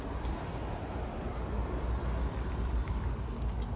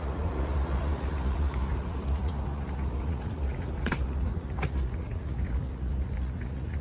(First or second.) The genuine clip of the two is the first